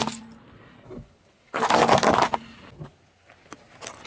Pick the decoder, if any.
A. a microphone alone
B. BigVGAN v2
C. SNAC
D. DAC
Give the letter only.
A